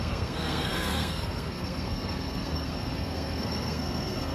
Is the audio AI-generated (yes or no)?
yes